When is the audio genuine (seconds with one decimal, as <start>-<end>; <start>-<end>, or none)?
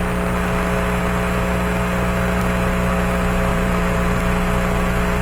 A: 0.0-3.5; 4.2-5.2